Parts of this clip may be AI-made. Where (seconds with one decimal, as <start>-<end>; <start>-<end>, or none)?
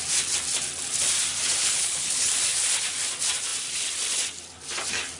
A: 1.6-2.3